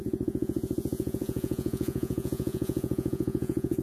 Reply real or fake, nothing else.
fake